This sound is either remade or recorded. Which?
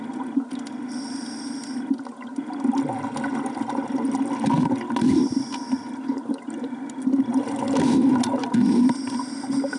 recorded